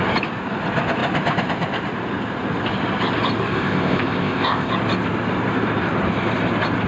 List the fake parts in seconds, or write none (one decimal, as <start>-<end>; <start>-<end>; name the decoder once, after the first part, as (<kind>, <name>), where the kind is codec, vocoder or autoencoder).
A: 3.5-4.7 (codec, ZipCodec)